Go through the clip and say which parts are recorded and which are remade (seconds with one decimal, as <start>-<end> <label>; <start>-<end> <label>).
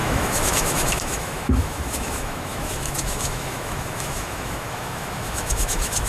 0.0-6.1 remade